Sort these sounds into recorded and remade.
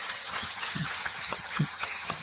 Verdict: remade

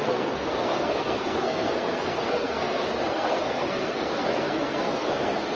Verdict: remade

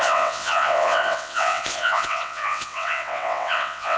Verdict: remade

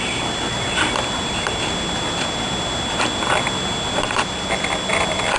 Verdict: recorded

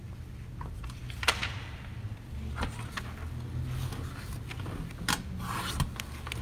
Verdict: recorded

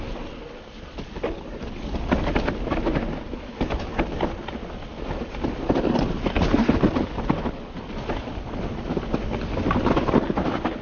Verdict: recorded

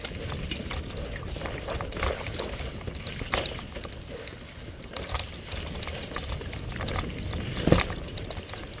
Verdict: recorded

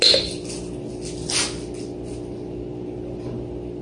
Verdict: recorded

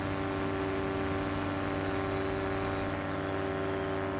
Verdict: recorded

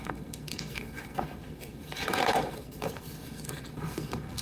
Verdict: remade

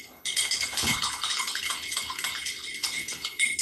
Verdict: remade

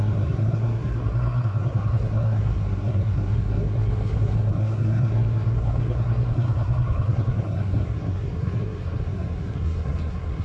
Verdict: remade